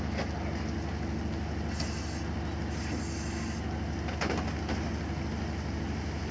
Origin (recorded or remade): recorded